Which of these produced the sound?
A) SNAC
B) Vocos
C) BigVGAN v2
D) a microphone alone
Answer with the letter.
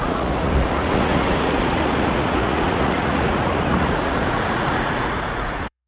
B